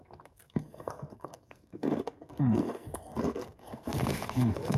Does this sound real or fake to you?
fake